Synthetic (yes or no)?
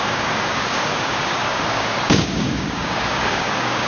yes